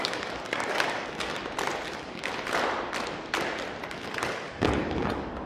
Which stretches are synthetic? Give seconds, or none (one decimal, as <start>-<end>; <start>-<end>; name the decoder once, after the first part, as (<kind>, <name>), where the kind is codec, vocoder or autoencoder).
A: 0.0-1.4 (codec, DAC); 1.9-2.3; 3.9-5.5